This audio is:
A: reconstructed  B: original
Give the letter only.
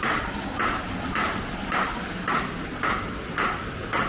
B